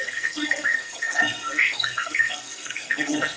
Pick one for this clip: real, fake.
fake